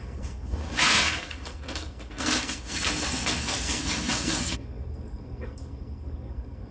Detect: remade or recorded remade